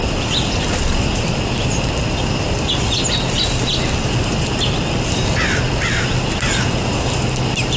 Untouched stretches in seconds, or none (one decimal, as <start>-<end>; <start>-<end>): 0.0-7.8